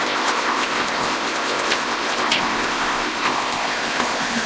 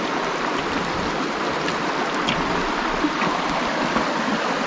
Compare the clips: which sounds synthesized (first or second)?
first